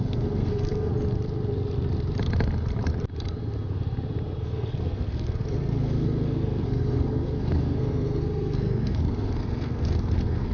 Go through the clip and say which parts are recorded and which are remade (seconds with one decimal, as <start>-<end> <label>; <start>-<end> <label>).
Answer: 0.0-0.9 remade; 0.9-4.4 recorded; 4.4-10.5 remade